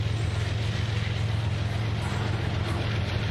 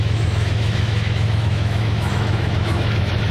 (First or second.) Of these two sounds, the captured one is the first